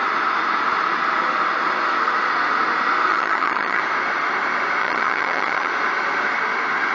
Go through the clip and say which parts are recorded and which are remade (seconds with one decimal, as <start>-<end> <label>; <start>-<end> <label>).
0.0-3.1 recorded; 3.1-3.8 remade; 3.8-4.8 recorded; 4.8-5.7 remade; 5.7-6.9 recorded